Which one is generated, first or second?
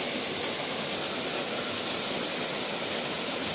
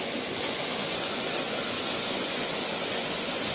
second